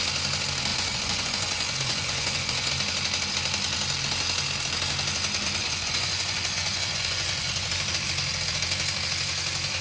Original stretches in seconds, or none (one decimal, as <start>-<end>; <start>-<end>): 0.0-0.7; 2.7-5.6; 7.7-9.8